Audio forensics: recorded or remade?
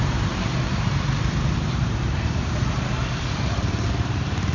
remade